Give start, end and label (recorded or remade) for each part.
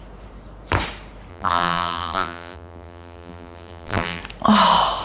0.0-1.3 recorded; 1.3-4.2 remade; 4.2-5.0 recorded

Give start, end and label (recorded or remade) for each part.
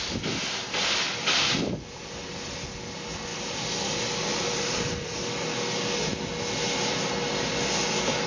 0.0-4.3 recorded; 4.3-4.9 remade; 4.9-8.3 recorded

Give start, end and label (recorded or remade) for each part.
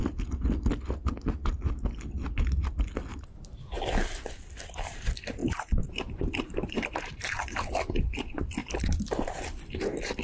0.0-3.1 recorded; 3.1-3.8 remade; 3.8-5.4 recorded; 5.4-7.7 remade; 7.7-8.6 recorded; 8.6-10.2 remade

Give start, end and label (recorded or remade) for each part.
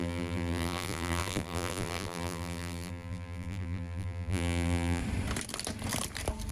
0.0-5.0 remade; 5.0-6.5 recorded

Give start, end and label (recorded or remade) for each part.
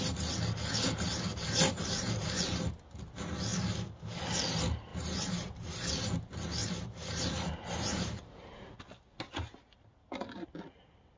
0.0-1.3 recorded; 1.3-2.4 remade; 2.4-4.9 recorded; 4.9-5.9 remade; 5.9-6.6 recorded; 6.6-8.7 remade; 8.7-11.2 recorded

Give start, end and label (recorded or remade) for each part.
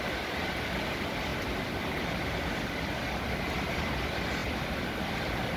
0.0-1.3 recorded; 1.3-2.5 remade; 2.5-5.6 recorded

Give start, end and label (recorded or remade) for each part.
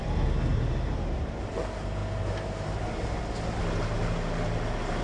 0.0-0.5 recorded; 0.5-1.3 remade; 1.3-5.0 recorded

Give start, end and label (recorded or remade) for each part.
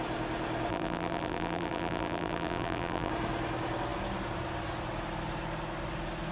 0.0-0.7 recorded; 0.7-3.1 remade; 3.1-6.3 recorded